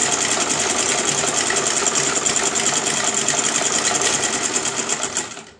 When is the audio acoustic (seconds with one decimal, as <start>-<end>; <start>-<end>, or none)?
0.0-5.6